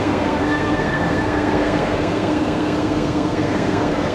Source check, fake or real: fake